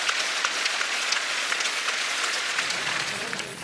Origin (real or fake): fake